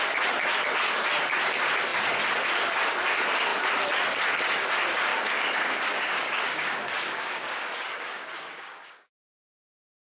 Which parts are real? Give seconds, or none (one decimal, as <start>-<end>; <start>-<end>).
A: 0.0-5.1; 9.3-10.1